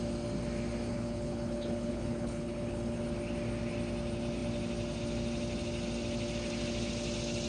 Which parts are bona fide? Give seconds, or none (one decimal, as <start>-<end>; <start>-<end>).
0.0-0.9; 3.0-7.5